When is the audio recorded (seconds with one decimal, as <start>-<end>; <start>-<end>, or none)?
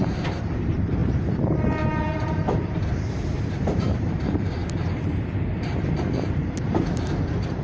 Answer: 4.6-6.8